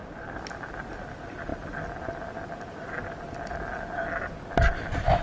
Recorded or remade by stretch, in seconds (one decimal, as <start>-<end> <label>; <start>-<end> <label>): 0.0-5.2 recorded